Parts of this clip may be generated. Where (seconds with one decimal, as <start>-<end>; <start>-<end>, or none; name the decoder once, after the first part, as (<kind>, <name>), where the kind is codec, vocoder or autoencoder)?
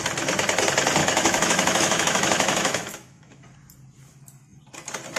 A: 1.0-3.4 (autoencoder, DAC-VAE)